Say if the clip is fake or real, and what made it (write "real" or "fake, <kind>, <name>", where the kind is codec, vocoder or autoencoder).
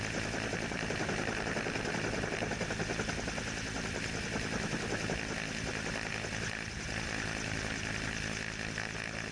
real